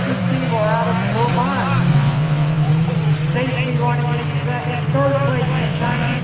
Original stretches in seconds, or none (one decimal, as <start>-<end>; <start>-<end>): 0.0-1.9; 2.7-5.5